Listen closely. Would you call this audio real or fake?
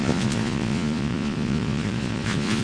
fake